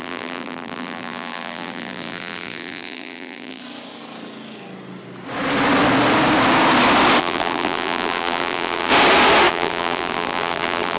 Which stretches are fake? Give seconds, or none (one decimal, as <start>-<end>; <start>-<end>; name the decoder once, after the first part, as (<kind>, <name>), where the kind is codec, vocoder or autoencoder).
0.0-3.6 (vocoder, BigVGAN v2); 7.2-8.9; 9.5-11.0